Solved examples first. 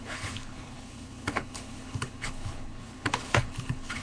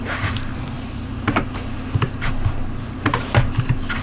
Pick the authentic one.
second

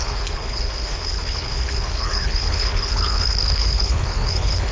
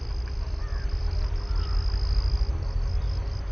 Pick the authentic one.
second